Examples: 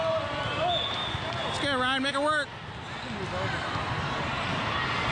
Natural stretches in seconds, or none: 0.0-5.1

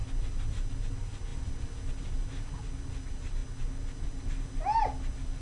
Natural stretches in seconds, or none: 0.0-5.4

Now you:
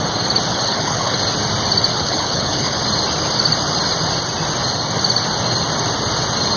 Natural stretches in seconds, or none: 0.0-0.5; 1.2-1.9; 2.8-6.6

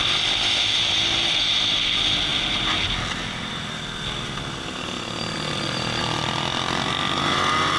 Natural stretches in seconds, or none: 0.0-7.8

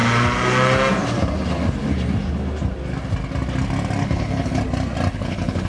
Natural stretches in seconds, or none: 0.0-4.0; 4.6-5.1

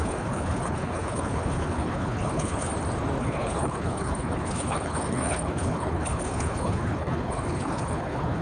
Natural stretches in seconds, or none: 2.7-3.2